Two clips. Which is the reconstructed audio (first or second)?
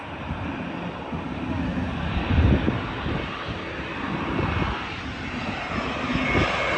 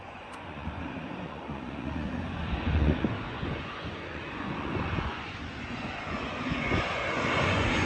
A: second